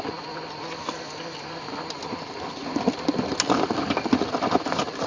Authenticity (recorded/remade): recorded